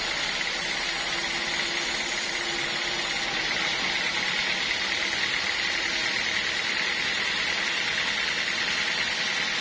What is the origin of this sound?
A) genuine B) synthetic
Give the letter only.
A